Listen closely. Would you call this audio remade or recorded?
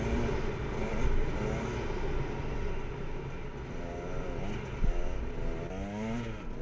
recorded